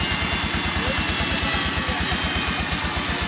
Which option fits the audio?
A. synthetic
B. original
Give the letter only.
B